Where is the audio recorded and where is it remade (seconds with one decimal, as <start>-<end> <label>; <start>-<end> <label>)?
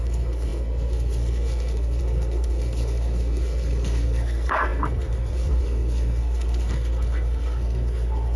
0.0-8.4 remade